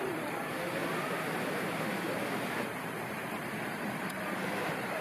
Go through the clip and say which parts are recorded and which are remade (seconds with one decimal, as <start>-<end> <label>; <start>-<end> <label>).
0.0-0.8 remade; 0.8-3.8 recorded; 3.8-5.0 remade